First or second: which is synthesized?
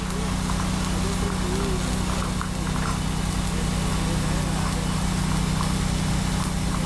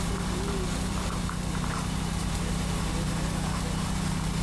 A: second